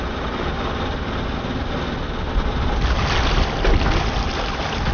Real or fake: real